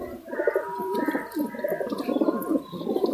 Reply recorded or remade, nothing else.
recorded